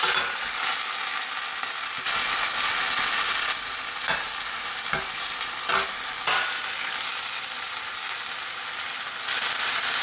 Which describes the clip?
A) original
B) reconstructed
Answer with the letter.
A